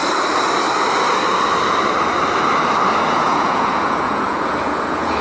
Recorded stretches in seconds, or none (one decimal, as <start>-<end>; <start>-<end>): 0.0-3.1